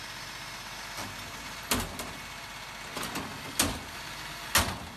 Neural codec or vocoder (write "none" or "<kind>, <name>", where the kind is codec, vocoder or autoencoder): none